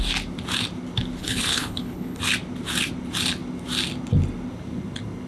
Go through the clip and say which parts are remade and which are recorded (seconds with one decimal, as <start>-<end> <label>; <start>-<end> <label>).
0.0-1.2 recorded; 1.2-2.2 remade; 2.2-5.3 recorded